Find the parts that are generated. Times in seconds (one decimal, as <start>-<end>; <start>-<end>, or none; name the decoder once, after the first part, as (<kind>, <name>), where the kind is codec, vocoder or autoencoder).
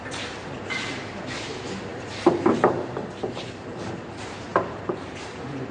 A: 1.9-2.7 (vocoder, BigVGAN v2); 4.5-5.7